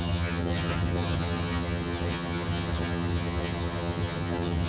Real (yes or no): no